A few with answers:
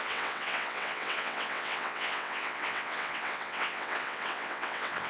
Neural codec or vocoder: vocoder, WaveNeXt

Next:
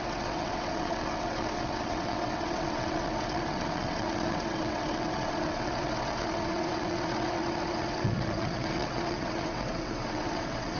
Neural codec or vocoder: vocoder, WaveNeXt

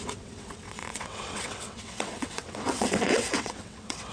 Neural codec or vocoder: vocoder, WaveNeXt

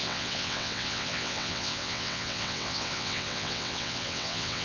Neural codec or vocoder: vocoder, WaveNeXt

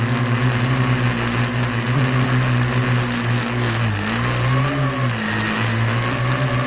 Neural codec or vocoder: none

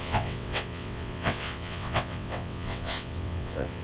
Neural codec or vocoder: vocoder, WaveNeXt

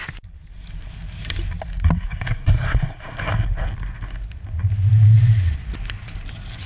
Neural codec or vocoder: none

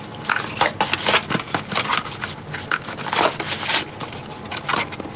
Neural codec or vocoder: none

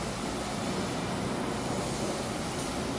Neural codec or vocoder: none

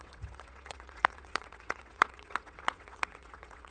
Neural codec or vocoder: vocoder, WaveNeXt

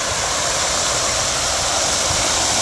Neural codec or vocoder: none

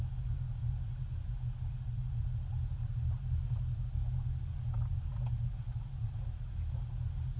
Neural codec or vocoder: none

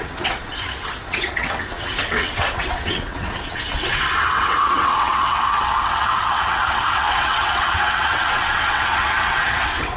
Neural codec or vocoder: vocoder, WaveNeXt